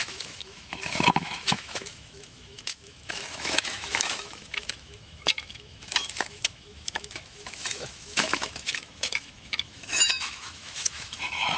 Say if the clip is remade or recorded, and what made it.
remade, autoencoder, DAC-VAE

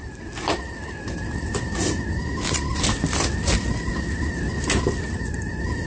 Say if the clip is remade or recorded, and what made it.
recorded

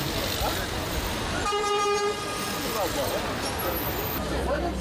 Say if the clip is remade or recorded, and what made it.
recorded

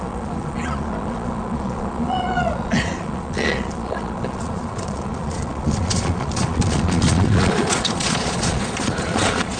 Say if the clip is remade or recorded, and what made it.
remade, vocoder, Vocos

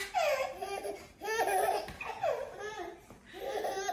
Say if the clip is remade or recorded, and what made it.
recorded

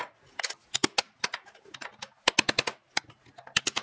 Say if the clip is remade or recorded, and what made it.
recorded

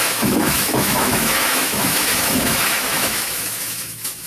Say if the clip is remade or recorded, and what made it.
remade, autoencoder, DAC-VAE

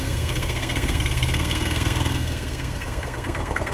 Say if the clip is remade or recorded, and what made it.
remade, codec, SNAC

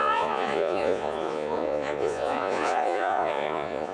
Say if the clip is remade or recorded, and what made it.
remade, vocoder, Vocos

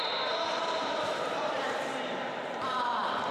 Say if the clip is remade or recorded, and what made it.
remade, vocoder, BigVGAN v2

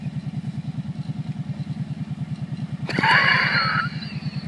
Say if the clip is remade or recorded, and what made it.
recorded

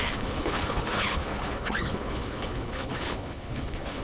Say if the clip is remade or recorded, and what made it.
remade, codec, HILCodec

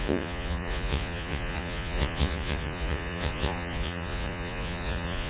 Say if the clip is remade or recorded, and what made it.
remade, vocoder, Vocos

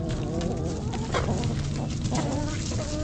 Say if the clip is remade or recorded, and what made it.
recorded